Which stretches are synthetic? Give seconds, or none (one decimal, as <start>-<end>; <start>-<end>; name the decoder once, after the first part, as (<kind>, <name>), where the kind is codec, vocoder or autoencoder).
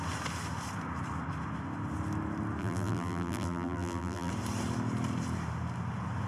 2.6-4.3 (vocoder, BigVGAN v2)